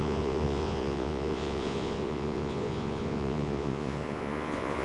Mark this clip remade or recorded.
remade